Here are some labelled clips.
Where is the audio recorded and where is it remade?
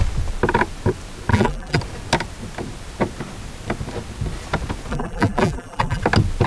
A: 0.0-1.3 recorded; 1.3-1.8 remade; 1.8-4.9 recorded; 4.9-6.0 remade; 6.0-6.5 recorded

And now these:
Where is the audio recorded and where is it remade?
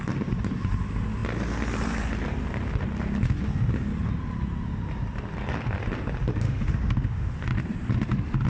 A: 0.0-6.3 recorded; 6.3-7.3 remade; 7.3-8.5 recorded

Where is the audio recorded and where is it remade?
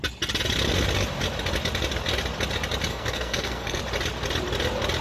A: 0.0-2.9 recorded; 2.9-3.8 remade; 3.8-5.0 recorded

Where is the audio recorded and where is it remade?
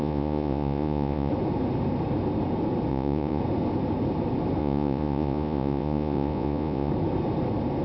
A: 0.0-1.3 remade; 1.3-2.9 recorded; 2.9-3.4 remade; 3.4-4.6 recorded; 4.6-6.9 remade; 6.9-7.8 recorded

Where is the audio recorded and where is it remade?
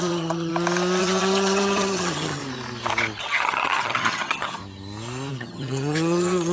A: 0.0-0.5 remade; 0.5-1.0 recorded; 1.0-2.4 remade; 2.4-3.2 recorded; 3.2-4.6 remade; 4.6-5.3 recorded; 5.3-6.5 remade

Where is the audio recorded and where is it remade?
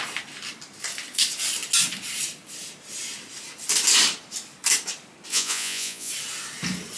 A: 0.0-5.3 recorded; 5.3-6.1 remade; 6.1-7.0 recorded